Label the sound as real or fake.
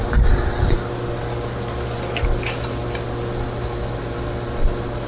real